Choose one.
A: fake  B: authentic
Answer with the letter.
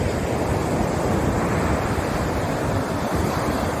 B